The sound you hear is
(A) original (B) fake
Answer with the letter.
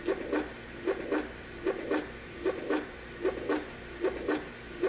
A